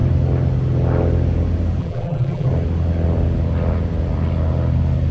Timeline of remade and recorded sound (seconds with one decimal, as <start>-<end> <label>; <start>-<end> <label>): 0.0-1.8 recorded; 1.8-2.5 remade; 2.5-5.1 recorded